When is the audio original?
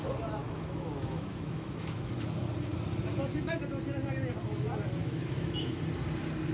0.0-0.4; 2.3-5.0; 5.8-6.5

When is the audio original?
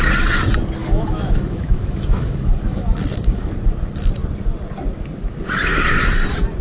0.0-0.8; 3.5-6.6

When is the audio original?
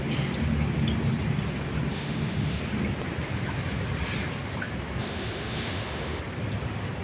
0.0-1.9; 2.6-5.0; 6.2-7.0